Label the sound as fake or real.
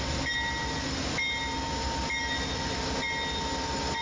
real